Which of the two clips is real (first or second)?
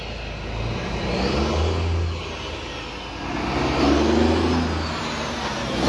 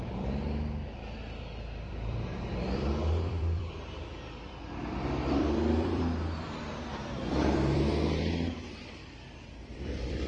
first